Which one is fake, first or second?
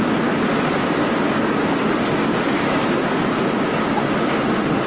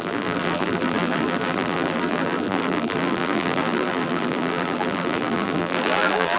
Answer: second